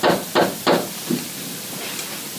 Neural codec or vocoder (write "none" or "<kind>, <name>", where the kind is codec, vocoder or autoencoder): none